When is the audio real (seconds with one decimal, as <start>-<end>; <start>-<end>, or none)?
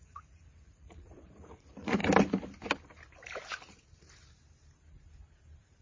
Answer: 2.0-5.8